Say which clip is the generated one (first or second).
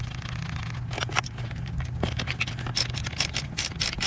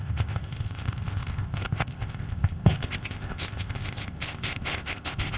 second